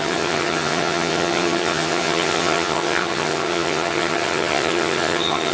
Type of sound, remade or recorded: remade